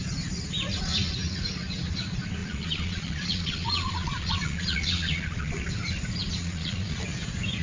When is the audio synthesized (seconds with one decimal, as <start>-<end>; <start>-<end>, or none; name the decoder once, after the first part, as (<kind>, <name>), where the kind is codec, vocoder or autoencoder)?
2.4-5.7 (vocoder, Vocos); 6.4-7.0